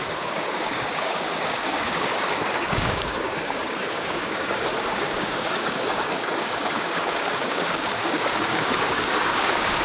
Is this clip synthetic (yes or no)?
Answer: yes